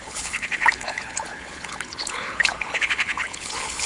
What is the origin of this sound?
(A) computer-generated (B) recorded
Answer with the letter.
A